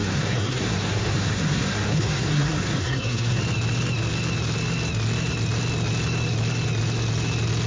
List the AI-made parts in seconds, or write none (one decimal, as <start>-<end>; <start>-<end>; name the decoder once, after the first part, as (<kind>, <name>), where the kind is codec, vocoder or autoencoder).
0.0-3.4 (codec, SNAC)